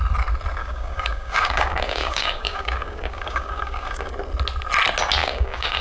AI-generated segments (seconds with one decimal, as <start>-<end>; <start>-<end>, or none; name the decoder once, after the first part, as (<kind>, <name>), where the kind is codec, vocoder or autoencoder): 0.6-4.1 (codec, DAC); 5.2-5.8